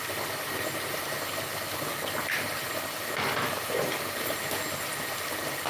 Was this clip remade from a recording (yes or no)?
no